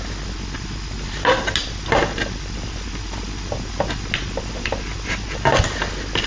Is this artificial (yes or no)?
no